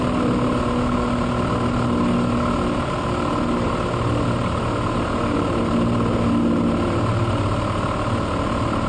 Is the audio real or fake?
real